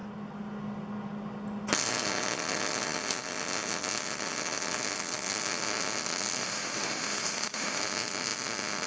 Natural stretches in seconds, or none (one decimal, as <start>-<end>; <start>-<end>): 0.0-6.4; 7.8-8.9

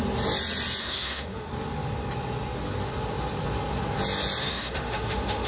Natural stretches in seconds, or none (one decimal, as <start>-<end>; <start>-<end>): 0.0-0.8; 1.5-4.4

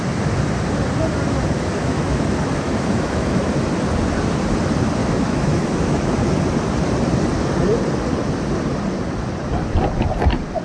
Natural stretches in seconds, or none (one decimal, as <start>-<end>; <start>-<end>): 0.0-1.8; 3.4-5.0; 6.1-10.6

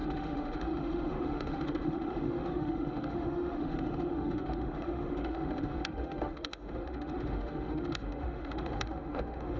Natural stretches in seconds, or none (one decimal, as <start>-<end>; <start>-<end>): none